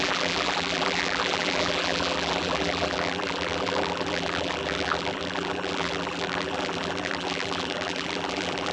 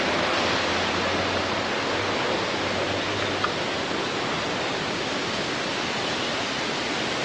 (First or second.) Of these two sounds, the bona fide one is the second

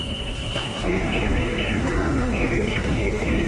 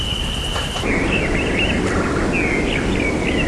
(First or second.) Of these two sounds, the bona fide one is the second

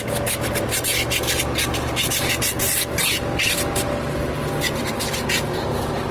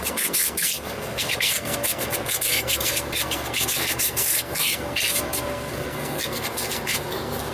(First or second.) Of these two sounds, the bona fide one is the first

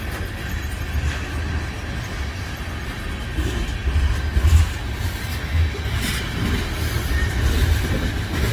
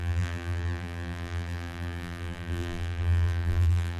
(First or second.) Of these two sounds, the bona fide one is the first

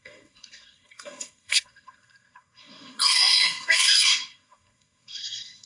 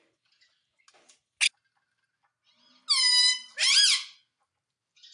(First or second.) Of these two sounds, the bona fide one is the second